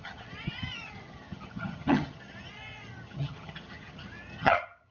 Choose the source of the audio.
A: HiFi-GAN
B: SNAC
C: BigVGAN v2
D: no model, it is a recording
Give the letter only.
A